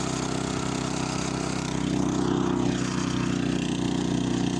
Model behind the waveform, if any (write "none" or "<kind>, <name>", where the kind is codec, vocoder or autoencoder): none